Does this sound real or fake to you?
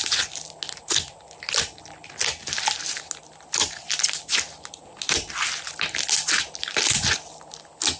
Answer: real